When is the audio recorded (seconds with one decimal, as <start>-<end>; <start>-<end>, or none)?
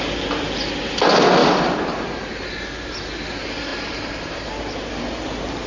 0.0-1.4; 2.5-3.7; 4.5-5.7